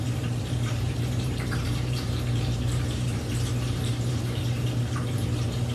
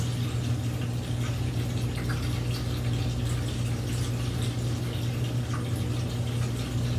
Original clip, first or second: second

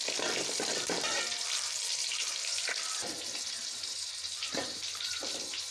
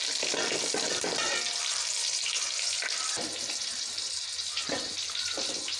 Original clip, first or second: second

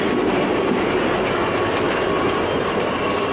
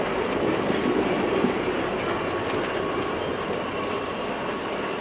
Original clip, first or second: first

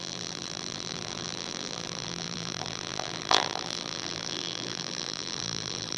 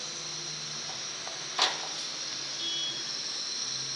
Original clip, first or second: second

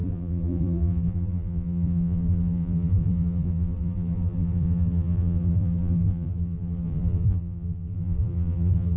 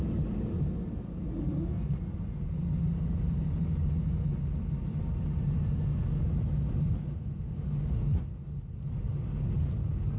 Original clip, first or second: second